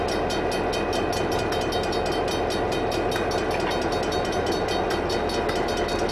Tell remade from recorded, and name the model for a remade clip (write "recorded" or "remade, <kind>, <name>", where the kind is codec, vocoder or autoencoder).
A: recorded